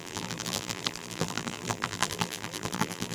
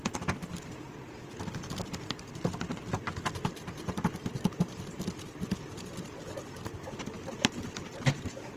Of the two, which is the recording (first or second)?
second